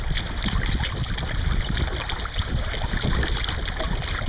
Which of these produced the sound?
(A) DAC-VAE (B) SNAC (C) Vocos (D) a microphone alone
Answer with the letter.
D